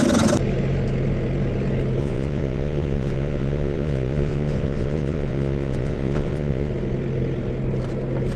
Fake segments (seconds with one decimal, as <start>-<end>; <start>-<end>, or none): 2.0-6.7